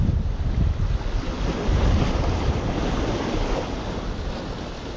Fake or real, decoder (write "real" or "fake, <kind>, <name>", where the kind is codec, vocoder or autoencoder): real